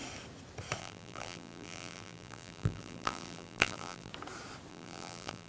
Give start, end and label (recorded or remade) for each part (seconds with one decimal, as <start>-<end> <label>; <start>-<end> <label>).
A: 0.0-0.8 recorded; 0.8-4.1 remade; 4.1-4.7 recorded; 4.7-5.5 remade